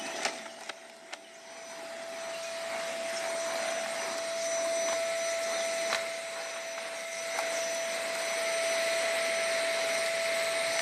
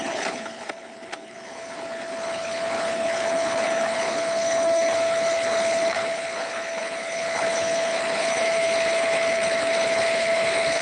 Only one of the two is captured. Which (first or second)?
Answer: first